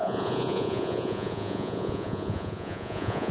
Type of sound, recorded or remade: remade